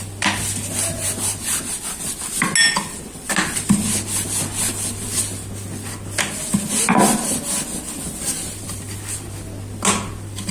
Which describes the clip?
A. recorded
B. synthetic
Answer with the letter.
A